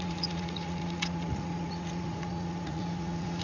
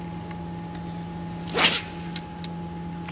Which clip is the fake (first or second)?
first